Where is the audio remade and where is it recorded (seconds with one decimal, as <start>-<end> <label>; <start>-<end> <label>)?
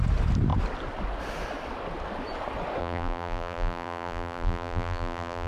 0.0-2.8 recorded; 2.8-5.5 remade